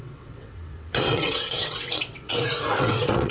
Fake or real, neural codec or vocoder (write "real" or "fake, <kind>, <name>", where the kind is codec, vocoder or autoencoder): fake, vocoder, WaveNeXt